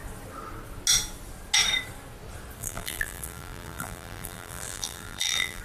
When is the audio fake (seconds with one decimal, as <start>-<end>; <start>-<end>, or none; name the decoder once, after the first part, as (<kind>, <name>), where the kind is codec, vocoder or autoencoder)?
2.6-5.6 (vocoder, BigVGAN v2)

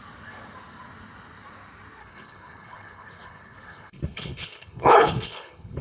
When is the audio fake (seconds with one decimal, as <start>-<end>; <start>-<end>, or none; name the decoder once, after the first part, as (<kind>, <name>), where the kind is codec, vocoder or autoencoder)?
2.0-5.8 (codec, HILCodec)

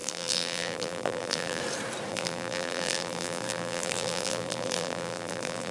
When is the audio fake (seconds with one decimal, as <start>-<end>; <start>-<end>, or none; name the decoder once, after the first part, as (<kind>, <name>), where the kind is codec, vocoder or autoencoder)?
0.0-1.6 (vocoder, BigVGAN v2); 2.1-5.7

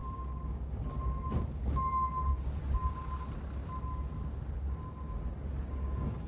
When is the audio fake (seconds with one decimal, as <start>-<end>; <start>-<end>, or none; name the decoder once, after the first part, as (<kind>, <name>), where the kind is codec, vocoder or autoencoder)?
0.0-1.1 (codec, DAC); 2.3-2.9; 4.2-6.3

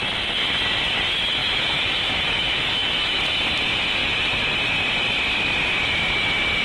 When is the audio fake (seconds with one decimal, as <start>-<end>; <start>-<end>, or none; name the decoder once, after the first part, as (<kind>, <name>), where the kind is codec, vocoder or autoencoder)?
1.4-3.2 (autoencoder, DAC-VAE)

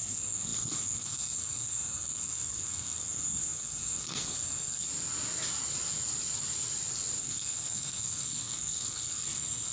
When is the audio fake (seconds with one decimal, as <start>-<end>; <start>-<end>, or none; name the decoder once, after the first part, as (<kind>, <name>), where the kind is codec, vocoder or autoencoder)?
0.0-4.9 (codec, SNAC); 7.2-9.7

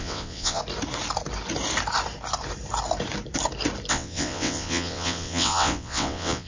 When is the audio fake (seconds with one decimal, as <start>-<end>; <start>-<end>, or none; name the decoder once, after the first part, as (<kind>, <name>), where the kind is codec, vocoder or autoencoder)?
0.0-0.6 (vocoder, WaveNeXt); 3.9-6.5